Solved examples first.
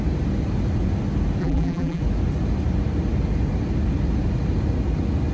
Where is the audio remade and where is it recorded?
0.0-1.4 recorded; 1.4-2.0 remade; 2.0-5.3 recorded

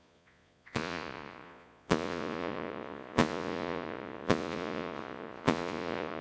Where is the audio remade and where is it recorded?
0.0-6.2 remade

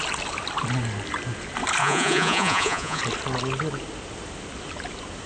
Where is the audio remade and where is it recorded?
0.0-1.8 recorded; 1.8-3.0 remade; 3.0-5.3 recorded

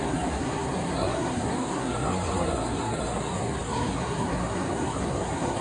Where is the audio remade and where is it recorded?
0.0-5.6 remade

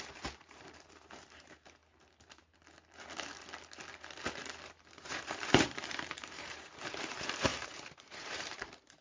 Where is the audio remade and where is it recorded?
0.0-1.8 remade; 1.8-4.9 recorded; 4.9-9.0 remade

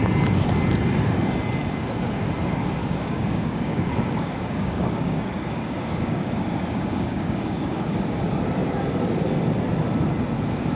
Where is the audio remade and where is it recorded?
0.0-2.8 recorded; 2.8-7.9 remade; 7.9-10.8 recorded

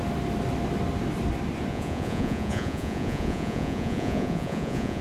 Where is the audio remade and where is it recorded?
0.0-1.7 recorded; 1.7-5.0 remade